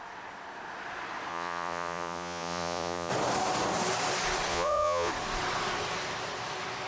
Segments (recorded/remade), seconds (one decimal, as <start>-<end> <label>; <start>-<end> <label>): 0.0-1.3 recorded; 1.3-3.1 remade; 3.1-4.5 recorded; 4.5-5.1 remade; 5.1-6.9 recorded